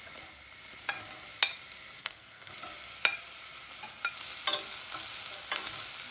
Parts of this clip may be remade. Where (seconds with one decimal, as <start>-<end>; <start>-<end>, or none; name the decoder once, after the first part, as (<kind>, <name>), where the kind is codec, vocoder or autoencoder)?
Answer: 2.0-2.5 (codec, SNAC)